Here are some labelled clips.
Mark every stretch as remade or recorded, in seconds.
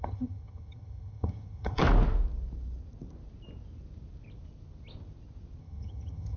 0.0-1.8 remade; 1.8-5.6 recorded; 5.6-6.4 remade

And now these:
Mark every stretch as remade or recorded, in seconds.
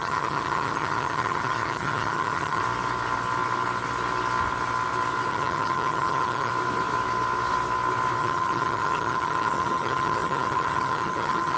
0.0-2.6 remade; 2.6-5.3 recorded; 5.3-6.5 remade; 6.5-8.2 recorded; 8.2-11.6 remade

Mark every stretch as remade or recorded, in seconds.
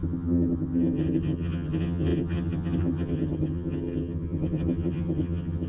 0.0-5.7 remade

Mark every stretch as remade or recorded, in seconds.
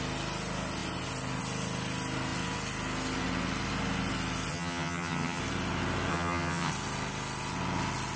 0.0-4.5 recorded; 4.5-5.4 remade; 5.4-6.1 recorded; 6.1-6.7 remade; 6.7-8.2 recorded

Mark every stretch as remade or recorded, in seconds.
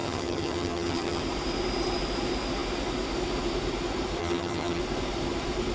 0.0-1.2 remade; 1.2-4.2 recorded; 4.2-4.8 remade; 4.8-5.7 recorded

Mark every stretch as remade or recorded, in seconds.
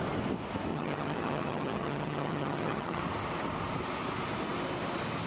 0.0-0.7 recorded; 0.7-3.0 remade; 3.0-5.3 recorded